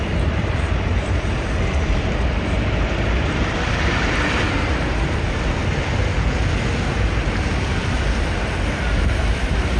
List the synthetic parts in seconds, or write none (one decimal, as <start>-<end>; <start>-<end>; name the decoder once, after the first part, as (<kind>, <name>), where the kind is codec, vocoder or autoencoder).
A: 0.0-5.6 (vocoder, BigVGAN v2); 7.6-9.8

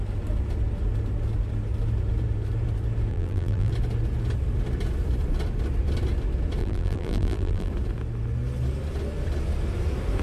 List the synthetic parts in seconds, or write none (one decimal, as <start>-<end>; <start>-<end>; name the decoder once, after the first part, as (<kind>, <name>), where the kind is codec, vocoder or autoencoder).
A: 3.1-3.7 (vocoder, BigVGAN v2); 6.6-7.7

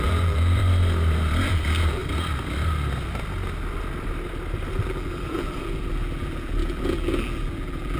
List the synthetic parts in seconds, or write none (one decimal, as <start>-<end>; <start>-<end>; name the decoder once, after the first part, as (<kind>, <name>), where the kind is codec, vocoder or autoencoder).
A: 0.0-0.6 (vocoder, BigVGAN v2); 1.4-2.0; 4.7-8.0

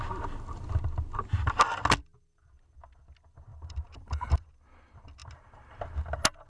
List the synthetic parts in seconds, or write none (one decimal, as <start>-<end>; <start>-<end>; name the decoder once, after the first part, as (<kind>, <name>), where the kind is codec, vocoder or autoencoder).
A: 3.5-4.4 (vocoder, BigVGAN v2)

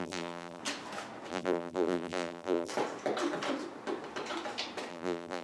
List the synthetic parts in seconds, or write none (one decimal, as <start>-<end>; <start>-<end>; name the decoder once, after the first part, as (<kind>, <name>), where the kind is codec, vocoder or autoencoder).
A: 0.0-0.6 (vocoder, BigVGAN v2); 1.3-2.7; 4.9-5.4

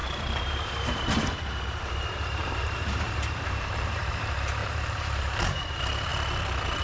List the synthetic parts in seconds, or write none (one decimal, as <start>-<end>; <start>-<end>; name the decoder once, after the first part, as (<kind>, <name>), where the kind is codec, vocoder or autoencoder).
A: 0.0-4.1 (vocoder, BigVGAN v2); 4.6-5.6